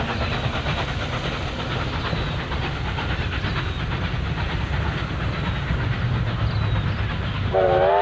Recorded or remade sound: recorded